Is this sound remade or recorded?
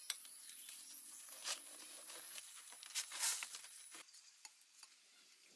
remade